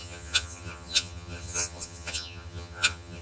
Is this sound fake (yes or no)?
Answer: yes